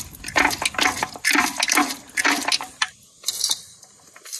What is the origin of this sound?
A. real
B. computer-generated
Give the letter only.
A